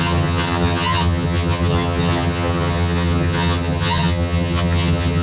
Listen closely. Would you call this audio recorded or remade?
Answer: remade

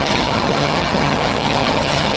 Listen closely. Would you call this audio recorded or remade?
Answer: remade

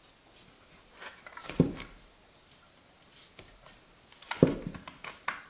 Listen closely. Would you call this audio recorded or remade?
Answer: recorded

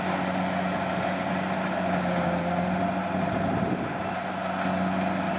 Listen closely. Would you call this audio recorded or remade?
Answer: recorded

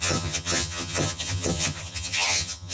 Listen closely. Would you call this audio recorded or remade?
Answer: remade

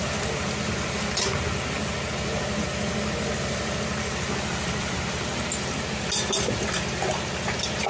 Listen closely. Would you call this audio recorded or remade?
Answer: recorded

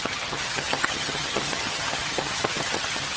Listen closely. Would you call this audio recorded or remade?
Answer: remade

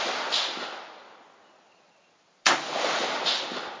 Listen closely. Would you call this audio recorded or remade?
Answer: recorded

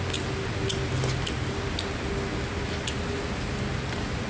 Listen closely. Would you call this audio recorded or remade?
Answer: recorded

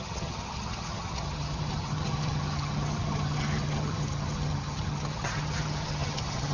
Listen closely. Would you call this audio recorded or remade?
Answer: remade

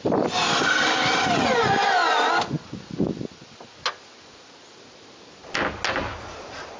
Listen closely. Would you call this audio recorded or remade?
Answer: recorded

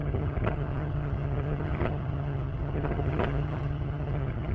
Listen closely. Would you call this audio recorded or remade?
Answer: remade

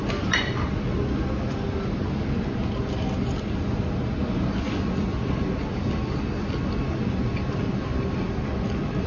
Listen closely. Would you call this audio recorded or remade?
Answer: recorded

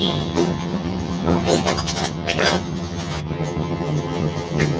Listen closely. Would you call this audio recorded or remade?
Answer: remade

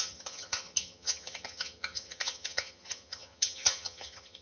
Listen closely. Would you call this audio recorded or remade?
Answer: remade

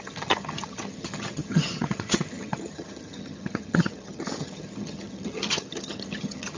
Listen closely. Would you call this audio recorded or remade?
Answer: remade